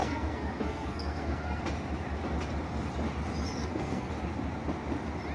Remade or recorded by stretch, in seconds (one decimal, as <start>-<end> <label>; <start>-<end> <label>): 0.0-1.6 remade; 1.6-3.6 recorded; 3.6-4.1 remade; 4.1-5.3 recorded